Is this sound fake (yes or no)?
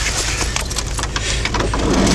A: no